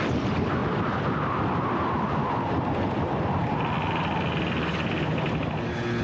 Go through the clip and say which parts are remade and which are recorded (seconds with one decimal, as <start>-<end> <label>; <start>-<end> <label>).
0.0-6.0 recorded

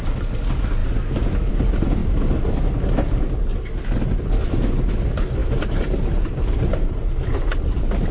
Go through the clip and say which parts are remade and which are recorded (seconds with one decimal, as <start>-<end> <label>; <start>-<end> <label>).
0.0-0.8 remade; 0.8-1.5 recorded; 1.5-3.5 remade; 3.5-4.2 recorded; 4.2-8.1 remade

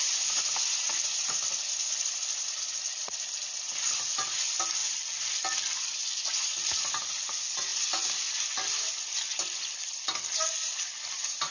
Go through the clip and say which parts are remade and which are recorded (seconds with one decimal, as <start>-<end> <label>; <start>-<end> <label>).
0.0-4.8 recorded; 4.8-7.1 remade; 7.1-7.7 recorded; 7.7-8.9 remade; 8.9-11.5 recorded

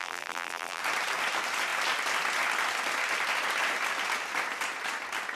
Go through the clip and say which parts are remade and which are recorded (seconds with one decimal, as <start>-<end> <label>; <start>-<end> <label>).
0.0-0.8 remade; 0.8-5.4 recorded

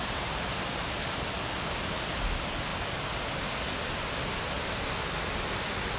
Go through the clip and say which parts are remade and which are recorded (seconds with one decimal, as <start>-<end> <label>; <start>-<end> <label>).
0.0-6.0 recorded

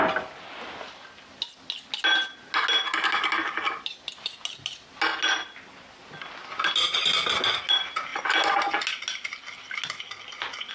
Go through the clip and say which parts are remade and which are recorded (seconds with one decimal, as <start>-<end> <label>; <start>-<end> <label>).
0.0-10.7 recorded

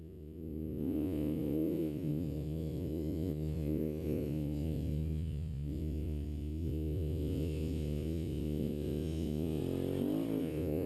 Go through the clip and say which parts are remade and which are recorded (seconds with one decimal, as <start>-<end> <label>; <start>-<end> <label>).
0.0-9.6 remade; 9.6-10.4 recorded; 10.4-10.9 remade

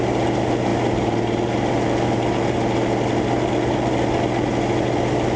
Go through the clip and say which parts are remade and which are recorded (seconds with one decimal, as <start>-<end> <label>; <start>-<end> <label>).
0.0-5.4 recorded